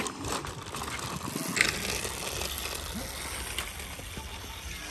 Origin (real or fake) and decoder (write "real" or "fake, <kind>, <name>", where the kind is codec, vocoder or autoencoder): real